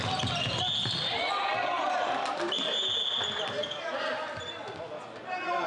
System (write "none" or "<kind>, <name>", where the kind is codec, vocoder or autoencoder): none